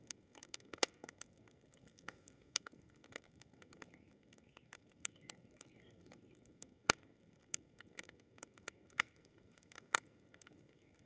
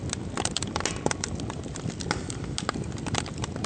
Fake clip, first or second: first